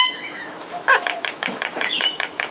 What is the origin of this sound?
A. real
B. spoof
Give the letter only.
B